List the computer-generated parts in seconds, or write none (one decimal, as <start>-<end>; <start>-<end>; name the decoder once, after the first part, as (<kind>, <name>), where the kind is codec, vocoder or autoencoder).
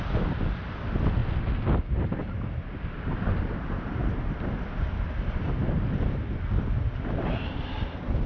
none